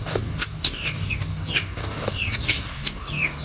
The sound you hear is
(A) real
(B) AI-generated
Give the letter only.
B